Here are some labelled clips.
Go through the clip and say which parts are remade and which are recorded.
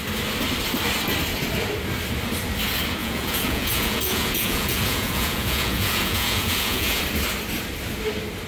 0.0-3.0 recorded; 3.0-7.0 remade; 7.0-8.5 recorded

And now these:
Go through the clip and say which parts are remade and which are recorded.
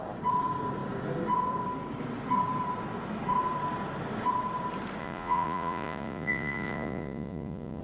0.0-5.0 recorded; 5.0-7.8 remade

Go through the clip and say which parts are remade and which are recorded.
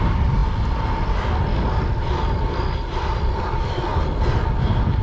0.0-5.0 recorded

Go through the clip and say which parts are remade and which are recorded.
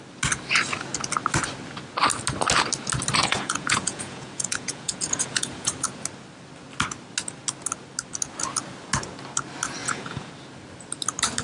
0.0-3.2 recorded; 3.2-5.7 remade; 5.7-9.8 recorded; 9.8-10.3 remade; 10.3-11.4 recorded